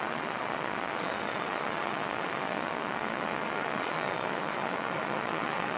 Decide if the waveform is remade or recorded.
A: remade